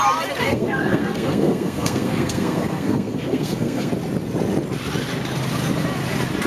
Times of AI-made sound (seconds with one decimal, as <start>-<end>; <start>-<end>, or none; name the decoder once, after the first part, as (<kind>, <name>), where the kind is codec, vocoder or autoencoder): 0.4-3.9 (codec, SNAC)